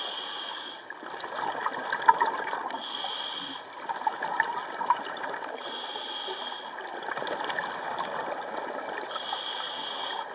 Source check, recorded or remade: recorded